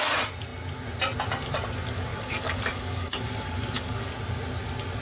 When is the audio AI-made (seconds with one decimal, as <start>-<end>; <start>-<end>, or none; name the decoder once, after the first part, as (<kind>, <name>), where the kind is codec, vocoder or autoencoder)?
2.1-4.1 (codec, DAC)